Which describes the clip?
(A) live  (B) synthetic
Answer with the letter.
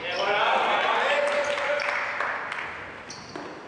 A